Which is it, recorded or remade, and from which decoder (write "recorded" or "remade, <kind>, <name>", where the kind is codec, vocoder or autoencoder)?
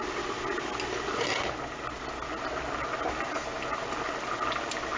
recorded